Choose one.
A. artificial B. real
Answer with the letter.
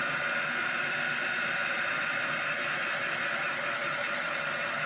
B